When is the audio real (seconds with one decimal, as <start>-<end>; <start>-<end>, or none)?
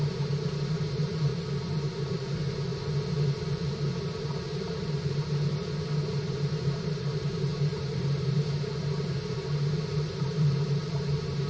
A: 1.3-2.1; 2.7-3.9